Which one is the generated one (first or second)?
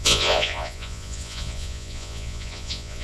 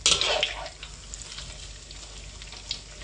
first